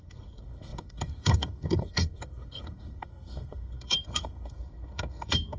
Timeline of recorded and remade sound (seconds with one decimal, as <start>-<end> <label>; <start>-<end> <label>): 0.0-5.6 remade